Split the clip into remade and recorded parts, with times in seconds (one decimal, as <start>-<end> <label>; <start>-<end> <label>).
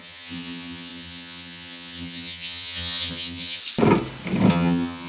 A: 0.0-3.6 remade; 3.6-4.5 recorded; 4.5-5.1 remade